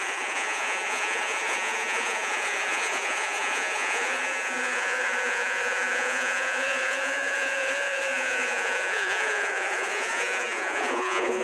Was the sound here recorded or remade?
remade